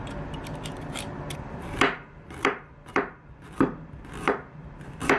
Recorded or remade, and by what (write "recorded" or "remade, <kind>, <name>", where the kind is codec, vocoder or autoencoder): remade, vocoder, BigVGAN v2